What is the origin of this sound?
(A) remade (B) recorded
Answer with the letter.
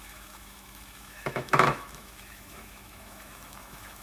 A